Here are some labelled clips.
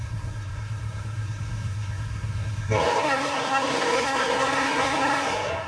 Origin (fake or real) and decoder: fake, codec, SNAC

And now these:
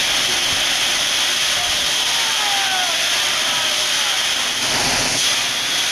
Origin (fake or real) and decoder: real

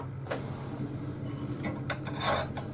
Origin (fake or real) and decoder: real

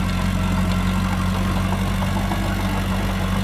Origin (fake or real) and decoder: real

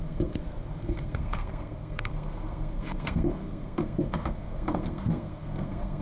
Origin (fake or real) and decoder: fake, codec, SNAC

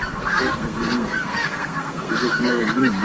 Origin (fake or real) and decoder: fake, codec, SNAC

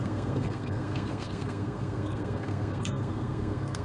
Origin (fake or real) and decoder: fake, codec, SNAC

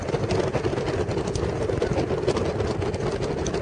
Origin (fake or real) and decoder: real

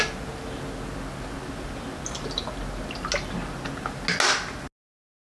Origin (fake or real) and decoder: real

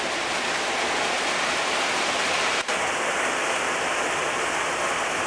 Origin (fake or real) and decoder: real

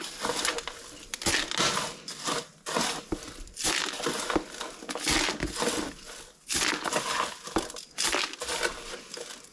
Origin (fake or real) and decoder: real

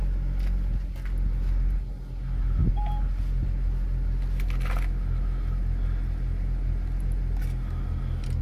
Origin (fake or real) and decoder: real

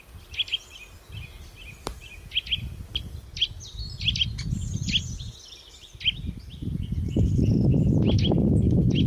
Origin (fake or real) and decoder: real